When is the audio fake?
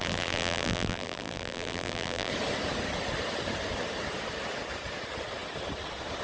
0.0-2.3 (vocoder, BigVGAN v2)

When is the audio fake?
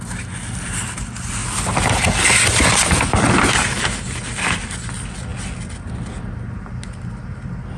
none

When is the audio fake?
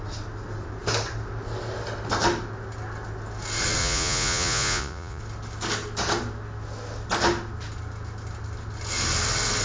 3.8-5.2 (vocoder, Vocos)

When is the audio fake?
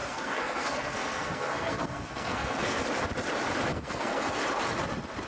0.0-2.8 (codec, SNAC); 3.7-4.4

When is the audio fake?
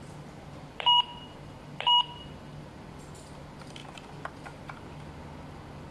0.0-5.9 (vocoder, BigVGAN v2)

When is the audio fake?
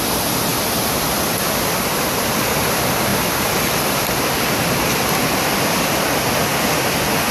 0.5-2.4 (vocoder, BigVGAN v2); 3.1-4.1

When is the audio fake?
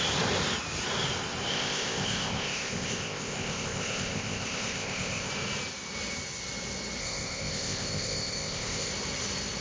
1.5-5.3 (codec, ZipCodec); 7.0-8.9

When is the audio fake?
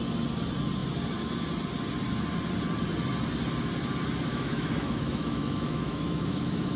4.3-6.8 (autoencoder, DAC-VAE)